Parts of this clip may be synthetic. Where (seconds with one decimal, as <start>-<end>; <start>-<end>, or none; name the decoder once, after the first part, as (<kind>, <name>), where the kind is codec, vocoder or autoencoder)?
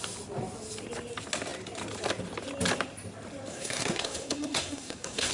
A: 3.5-5.3 (codec, SNAC)